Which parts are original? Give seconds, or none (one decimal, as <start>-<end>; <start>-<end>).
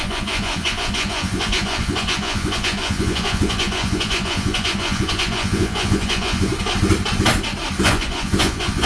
6.5-7.8